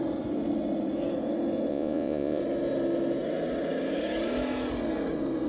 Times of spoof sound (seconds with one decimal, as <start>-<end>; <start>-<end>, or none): 1.7-2.4